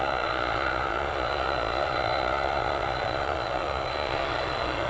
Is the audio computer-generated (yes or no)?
yes